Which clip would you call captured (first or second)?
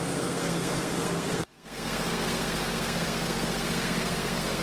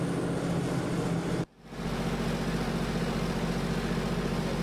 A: second